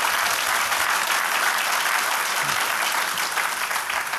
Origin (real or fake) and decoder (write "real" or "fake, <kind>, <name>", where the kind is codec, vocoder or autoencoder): real